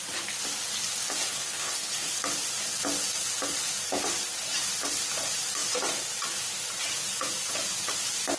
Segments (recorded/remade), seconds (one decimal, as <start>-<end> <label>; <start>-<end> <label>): 0.0-1.3 recorded; 1.3-2.0 remade; 2.0-8.4 recorded